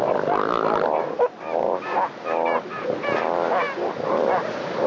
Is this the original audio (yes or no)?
yes